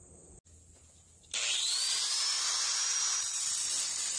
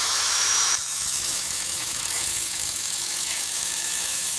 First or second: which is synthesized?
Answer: second